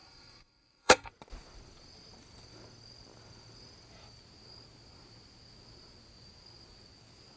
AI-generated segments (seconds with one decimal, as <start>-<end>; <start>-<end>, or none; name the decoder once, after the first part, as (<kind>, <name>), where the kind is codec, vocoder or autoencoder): 0.0-1.1 (codec, SNAC)